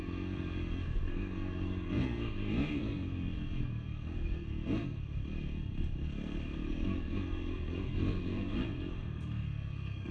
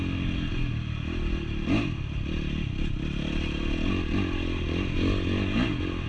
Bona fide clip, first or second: second